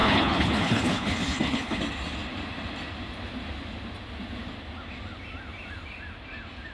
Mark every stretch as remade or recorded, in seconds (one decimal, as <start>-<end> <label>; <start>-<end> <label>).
0.0-1.8 remade; 1.8-6.7 recorded